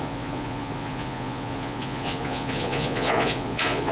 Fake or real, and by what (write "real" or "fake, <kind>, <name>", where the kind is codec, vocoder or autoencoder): fake, vocoder, Vocos